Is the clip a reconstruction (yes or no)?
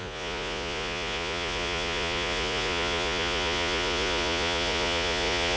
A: yes